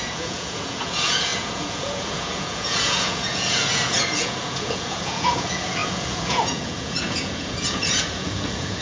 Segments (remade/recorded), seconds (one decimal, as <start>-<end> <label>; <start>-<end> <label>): 0.0-8.8 remade